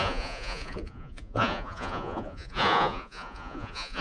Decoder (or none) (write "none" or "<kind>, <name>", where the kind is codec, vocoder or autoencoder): vocoder, Vocos